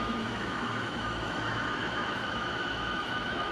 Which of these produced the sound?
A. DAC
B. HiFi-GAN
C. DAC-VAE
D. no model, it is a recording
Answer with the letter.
C